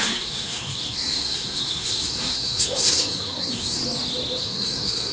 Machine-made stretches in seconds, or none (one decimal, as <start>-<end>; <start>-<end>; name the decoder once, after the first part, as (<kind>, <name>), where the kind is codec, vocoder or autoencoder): 0.0-3.8 (codec, SNAC); 4.4-5.1